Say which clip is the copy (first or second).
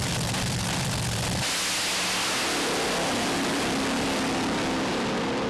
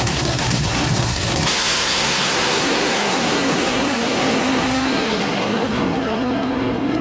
second